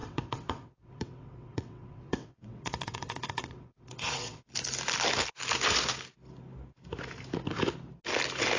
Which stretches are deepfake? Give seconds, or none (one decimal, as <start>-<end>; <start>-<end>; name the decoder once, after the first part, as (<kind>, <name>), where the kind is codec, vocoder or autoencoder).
0.0-4.4 (vocoder, WaveNeXt)